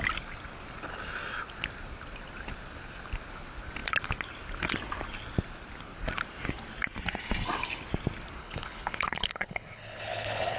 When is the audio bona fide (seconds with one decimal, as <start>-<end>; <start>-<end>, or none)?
0.0-8.4